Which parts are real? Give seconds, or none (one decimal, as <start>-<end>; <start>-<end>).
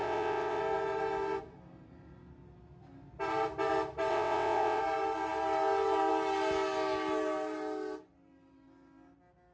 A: 0.6-4.1; 4.8-9.5